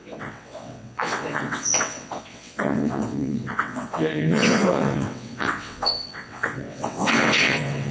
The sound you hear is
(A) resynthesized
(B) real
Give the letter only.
A